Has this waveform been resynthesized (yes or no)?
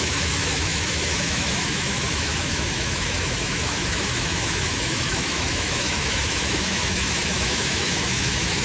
yes